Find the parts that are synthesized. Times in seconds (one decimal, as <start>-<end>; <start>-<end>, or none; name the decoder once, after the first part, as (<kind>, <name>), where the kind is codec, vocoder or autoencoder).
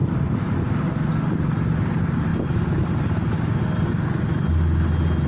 none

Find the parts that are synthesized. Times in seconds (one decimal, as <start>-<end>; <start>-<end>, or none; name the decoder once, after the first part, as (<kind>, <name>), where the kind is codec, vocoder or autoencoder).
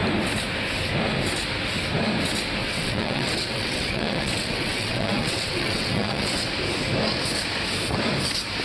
2.6-6.5 (vocoder, WaveNeXt)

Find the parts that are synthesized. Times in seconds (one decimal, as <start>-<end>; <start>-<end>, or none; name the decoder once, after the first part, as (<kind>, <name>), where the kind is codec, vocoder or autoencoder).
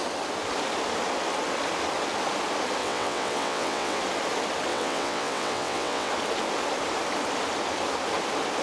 2.8-4.0 (vocoder, WaveNeXt); 4.7-6.1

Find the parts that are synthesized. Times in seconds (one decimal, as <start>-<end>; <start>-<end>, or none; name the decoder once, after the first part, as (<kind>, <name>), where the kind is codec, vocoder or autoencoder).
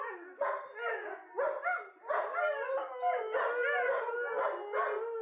none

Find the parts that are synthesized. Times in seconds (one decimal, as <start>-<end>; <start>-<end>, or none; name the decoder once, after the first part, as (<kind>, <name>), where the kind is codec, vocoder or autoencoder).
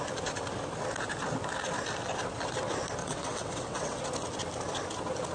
3.0-4.0 (vocoder, WaveNeXt)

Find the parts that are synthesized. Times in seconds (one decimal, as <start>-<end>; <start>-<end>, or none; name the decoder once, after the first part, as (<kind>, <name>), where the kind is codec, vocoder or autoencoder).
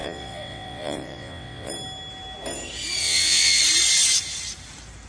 0.0-1.7 (vocoder, WaveNeXt); 3.0-3.6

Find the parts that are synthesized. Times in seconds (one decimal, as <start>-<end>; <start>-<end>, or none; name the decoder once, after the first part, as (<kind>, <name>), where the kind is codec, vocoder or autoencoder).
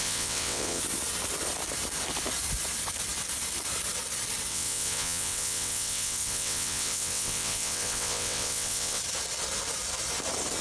0.0-0.8 (vocoder, WaveNeXt); 4.5-9.0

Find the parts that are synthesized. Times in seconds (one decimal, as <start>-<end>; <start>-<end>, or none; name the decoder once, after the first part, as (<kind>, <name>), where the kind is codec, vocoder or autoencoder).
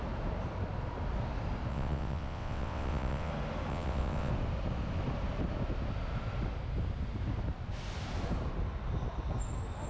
1.7-3.3 (vocoder, WaveNeXt); 3.7-4.3